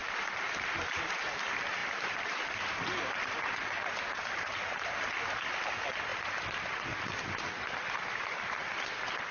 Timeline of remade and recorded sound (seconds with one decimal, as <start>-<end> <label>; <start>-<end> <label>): 0.0-1.0 remade; 1.0-1.8 recorded; 1.8-5.5 remade; 5.5-6.1 recorded; 6.1-9.3 remade